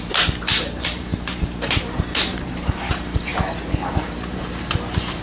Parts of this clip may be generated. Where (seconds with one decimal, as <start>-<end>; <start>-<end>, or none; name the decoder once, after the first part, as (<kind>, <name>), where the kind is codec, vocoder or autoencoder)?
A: 0.0-5.2 (vocoder, BigVGAN v2)